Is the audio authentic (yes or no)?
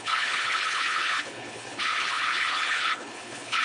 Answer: no